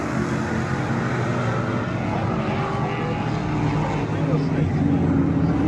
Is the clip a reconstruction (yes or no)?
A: no